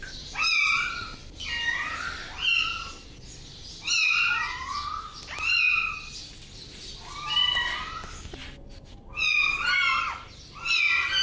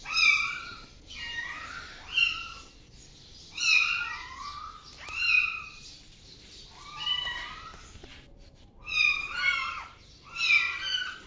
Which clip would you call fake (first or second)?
second